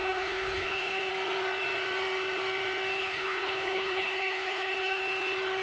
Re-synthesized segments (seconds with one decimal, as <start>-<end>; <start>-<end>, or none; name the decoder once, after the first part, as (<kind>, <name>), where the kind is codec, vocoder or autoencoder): 0.0-1.1 (codec, HILCodec); 3.0-5.0